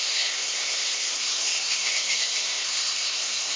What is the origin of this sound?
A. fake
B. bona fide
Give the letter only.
A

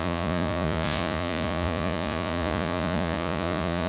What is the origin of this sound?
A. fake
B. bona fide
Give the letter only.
A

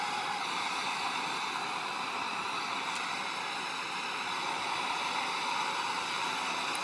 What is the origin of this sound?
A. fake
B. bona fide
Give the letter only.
A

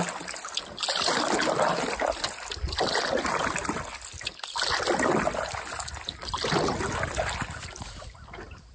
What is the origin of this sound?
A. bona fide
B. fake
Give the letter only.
A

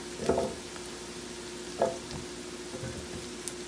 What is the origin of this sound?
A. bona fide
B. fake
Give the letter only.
A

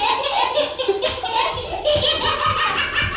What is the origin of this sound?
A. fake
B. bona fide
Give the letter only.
B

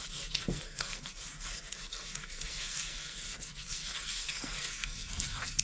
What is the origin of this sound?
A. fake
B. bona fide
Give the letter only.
A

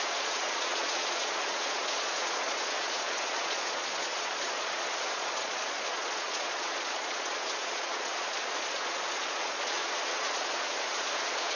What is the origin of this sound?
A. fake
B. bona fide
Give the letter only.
A